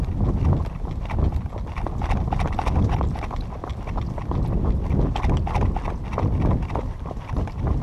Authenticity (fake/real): real